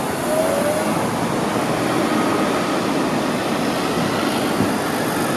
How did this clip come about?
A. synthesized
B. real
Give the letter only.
B